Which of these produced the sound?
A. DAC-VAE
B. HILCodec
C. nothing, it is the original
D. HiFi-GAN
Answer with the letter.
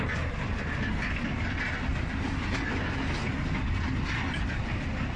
C